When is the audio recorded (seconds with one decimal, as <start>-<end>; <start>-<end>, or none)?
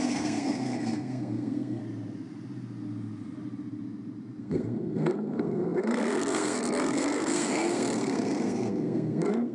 1.8-4.4